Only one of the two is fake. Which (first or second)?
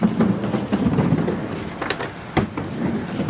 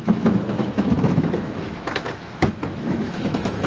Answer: second